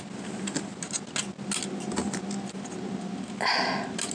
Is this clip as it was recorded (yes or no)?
yes